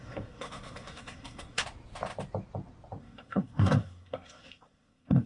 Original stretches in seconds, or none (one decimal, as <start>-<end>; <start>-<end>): 1.6-3.0